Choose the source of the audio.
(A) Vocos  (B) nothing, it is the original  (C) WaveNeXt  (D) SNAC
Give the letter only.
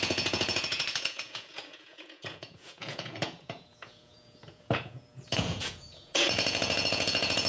A